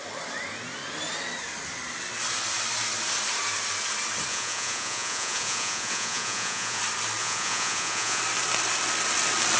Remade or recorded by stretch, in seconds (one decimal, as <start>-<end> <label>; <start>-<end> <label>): 0.0-4.3 recorded; 4.3-6.8 remade; 6.8-7.2 recorded; 7.2-8.2 remade; 8.2-9.6 recorded